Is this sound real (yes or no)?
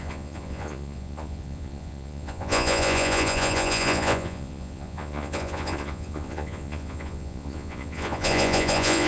no